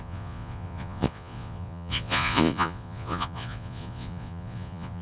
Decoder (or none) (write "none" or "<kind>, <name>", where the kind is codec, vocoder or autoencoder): vocoder, Vocos